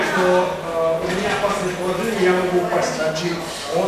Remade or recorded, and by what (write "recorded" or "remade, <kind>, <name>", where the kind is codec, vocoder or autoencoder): recorded